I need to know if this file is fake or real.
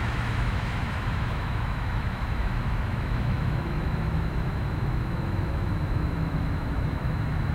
fake